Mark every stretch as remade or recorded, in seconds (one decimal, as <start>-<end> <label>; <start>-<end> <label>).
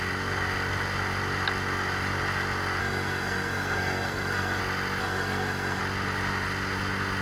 0.0-2.8 recorded; 2.8-4.6 remade; 4.6-5.0 recorded; 5.0-5.8 remade; 5.8-7.2 recorded